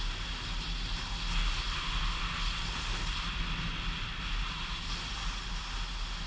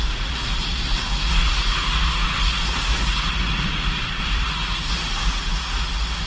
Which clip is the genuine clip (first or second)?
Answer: first